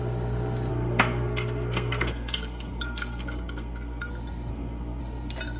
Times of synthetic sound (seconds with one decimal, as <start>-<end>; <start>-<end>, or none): 0.7-4.1; 4.5-5.0